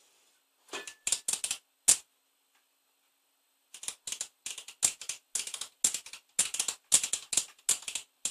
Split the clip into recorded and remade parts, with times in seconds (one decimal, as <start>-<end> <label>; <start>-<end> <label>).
0.0-8.3 recorded